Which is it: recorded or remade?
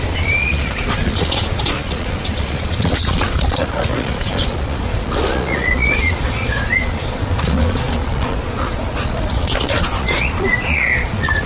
remade